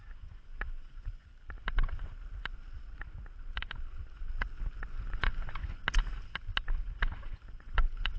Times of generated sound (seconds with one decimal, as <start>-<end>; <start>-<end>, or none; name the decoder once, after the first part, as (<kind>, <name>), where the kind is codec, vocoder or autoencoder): 0.0-1.3 (vocoder, Vocos); 4.9-5.8; 7.2-8.2